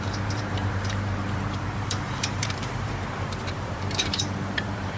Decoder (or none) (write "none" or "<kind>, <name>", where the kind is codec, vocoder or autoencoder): vocoder, BigVGAN v2